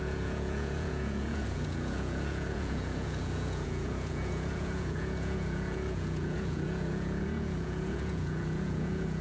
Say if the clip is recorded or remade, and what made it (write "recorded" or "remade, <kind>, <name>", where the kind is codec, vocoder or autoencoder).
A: remade, vocoder, Vocos